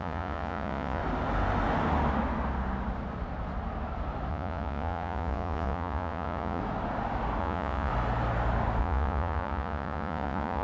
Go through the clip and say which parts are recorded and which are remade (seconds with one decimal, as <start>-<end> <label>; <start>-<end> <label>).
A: 0.0-1.0 remade; 1.0-4.3 recorded; 4.3-6.6 remade; 6.6-7.4 recorded; 7.4-7.9 remade; 7.9-8.8 recorded; 8.8-10.6 remade